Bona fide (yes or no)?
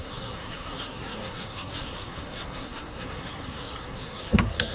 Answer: no